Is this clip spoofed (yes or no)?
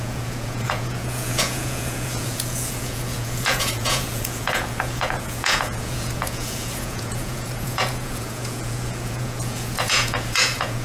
yes